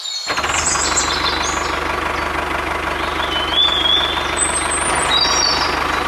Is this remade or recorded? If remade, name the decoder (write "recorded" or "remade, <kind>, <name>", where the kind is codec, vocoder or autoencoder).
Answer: recorded